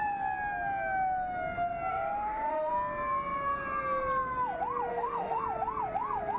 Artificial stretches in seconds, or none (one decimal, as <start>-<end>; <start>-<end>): 1.9-2.7; 4.9-5.4